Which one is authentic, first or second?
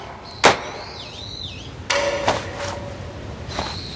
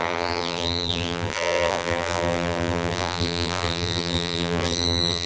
first